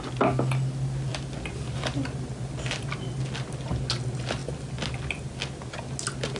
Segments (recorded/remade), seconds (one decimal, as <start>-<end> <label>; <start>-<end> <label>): 0.0-6.4 recorded